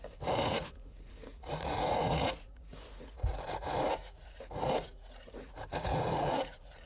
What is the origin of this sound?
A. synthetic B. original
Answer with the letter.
A